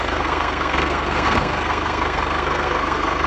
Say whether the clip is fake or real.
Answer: fake